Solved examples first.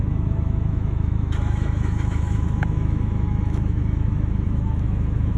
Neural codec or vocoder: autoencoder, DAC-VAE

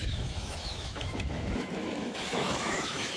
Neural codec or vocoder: autoencoder, DAC-VAE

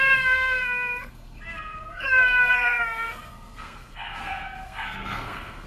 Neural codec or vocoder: codec, SNAC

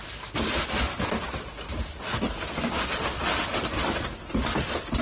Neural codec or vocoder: none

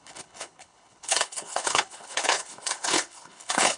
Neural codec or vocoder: codec, HILCodec